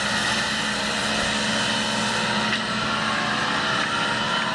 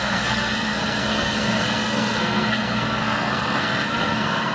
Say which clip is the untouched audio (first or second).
first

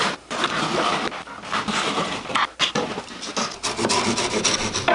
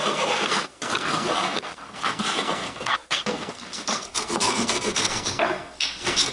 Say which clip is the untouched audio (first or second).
first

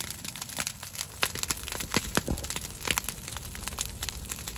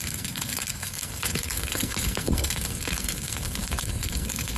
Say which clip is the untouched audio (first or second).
first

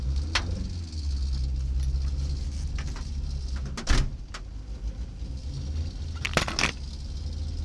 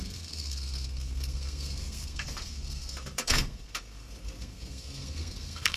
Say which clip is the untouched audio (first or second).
first